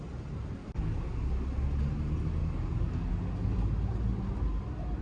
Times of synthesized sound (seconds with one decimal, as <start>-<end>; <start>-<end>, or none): 0.6-1.3; 2.4-3.1